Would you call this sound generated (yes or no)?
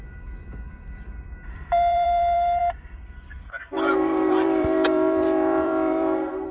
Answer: yes